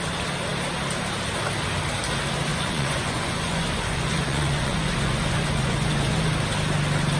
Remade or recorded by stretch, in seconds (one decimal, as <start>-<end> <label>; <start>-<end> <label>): 0.0-2.5 recorded; 2.5-6.2 remade; 6.2-7.2 recorded